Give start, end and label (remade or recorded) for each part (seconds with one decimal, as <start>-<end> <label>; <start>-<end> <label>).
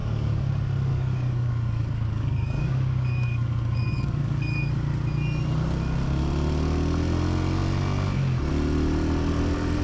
0.0-0.5 remade; 0.5-0.9 recorded; 0.9-4.7 remade; 4.7-9.8 recorded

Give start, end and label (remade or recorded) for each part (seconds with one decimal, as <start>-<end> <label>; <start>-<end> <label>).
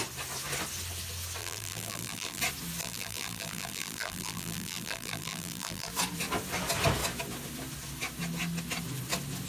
0.0-1.4 recorded; 1.4-2.4 remade; 2.4-2.8 recorded; 2.8-5.9 remade; 5.9-9.5 recorded